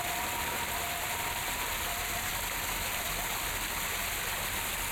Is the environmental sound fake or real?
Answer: real